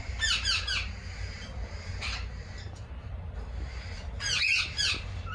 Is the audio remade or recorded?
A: remade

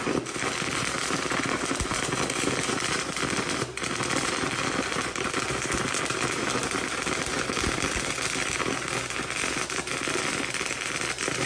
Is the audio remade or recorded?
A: remade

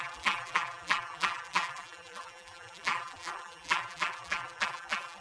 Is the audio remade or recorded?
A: remade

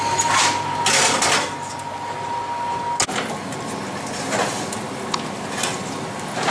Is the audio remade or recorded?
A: recorded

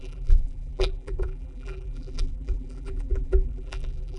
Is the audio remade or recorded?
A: remade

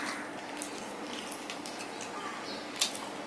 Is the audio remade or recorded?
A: recorded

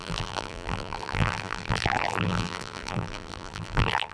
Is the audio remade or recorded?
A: remade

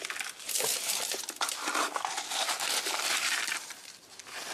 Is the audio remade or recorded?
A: recorded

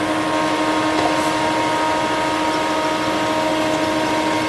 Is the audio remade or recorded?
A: recorded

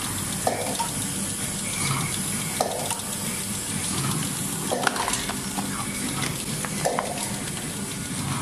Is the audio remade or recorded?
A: recorded